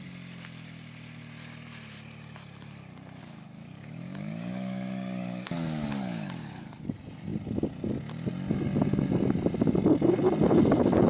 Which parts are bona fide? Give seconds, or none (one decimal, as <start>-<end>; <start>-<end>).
0.0-3.2; 6.8-11.1